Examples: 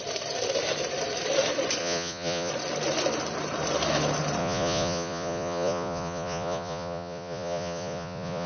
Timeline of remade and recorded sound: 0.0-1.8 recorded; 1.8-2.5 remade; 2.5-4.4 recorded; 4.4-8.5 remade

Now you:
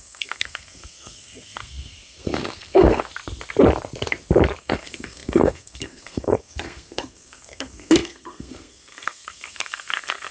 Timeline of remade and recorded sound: 0.0-3.1 remade; 3.1-4.6 recorded; 4.6-10.3 remade

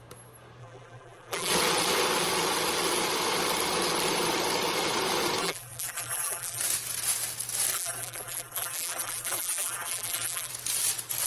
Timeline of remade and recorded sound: 0.0-0.6 recorded; 0.6-1.5 remade; 1.5-5.4 recorded; 5.4-6.6 remade; 6.6-7.7 recorded; 7.7-10.5 remade; 10.5-11.3 recorded

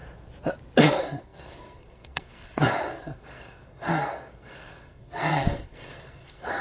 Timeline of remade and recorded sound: 0.0-0.8 recorded; 0.8-6.6 remade

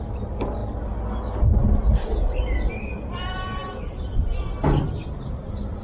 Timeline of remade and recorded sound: 0.0-5.8 recorded